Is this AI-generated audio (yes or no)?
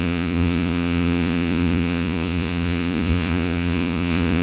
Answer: yes